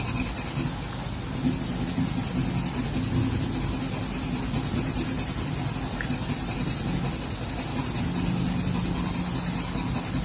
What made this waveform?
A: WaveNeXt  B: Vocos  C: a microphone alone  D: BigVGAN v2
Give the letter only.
C